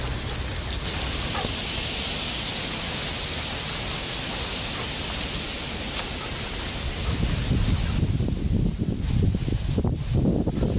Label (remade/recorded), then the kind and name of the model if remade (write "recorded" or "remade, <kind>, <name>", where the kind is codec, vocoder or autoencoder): recorded